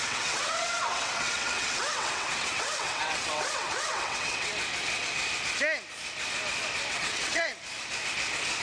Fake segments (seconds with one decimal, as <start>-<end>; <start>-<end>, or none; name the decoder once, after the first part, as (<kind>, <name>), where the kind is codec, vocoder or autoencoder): 0.0-4.5 (vocoder, WaveNeXt); 6.9-7.5